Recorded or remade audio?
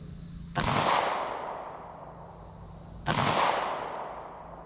recorded